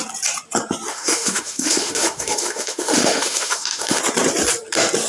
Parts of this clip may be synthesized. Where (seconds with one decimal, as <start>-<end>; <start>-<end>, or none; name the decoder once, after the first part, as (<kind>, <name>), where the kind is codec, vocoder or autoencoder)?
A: 0.9-4.0 (autoencoder, DAC-VAE)